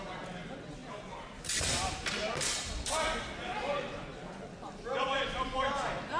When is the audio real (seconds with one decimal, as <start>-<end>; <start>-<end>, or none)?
0.0-6.2